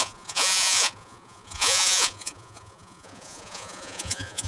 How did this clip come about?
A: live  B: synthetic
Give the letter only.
B